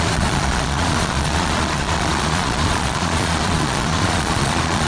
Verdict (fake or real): fake